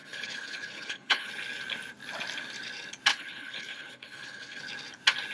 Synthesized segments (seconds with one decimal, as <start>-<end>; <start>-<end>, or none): 0.0-1.3; 3.1-4.6